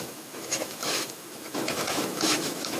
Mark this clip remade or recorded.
remade